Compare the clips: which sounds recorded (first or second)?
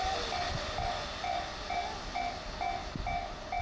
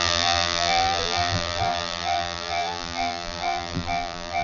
first